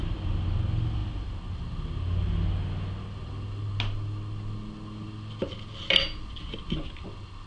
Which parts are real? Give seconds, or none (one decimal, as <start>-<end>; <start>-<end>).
0.0-7.5